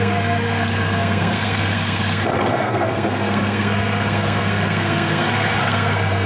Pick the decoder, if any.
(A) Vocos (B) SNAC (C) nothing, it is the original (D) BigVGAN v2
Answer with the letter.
B